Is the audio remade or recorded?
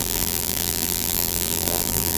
remade